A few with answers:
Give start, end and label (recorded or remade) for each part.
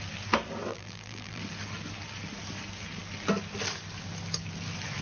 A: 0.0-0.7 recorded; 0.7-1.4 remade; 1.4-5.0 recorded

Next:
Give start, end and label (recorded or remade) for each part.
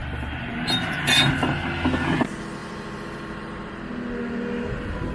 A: 0.0-2.6 recorded; 2.6-3.8 remade; 3.8-5.1 recorded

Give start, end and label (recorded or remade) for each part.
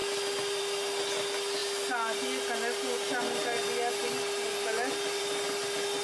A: 0.0-6.0 recorded